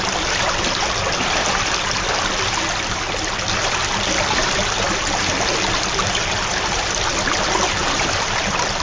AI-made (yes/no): no